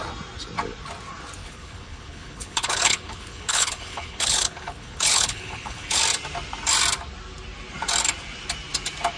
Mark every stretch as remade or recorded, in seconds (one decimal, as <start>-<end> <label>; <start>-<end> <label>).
0.0-1.4 recorded; 1.4-6.0 remade; 6.0-9.2 recorded